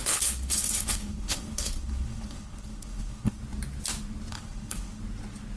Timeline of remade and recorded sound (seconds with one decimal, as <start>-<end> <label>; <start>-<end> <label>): 0.0-3.4 remade; 3.4-4.3 recorded; 4.3-5.0 remade; 5.0-5.6 recorded